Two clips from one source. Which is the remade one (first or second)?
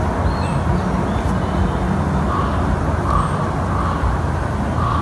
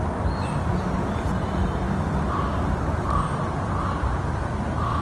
second